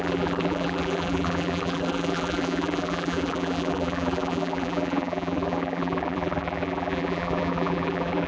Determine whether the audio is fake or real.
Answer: fake